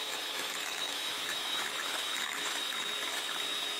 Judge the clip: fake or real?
fake